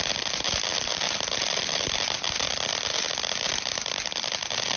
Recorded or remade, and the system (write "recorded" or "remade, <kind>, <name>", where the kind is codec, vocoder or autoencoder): recorded